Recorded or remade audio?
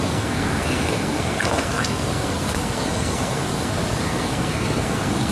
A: remade